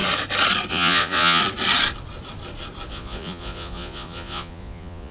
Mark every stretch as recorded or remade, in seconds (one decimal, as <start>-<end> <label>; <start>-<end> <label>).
0.0-0.7 recorded; 0.7-1.4 remade; 1.4-2.9 recorded; 2.9-5.1 remade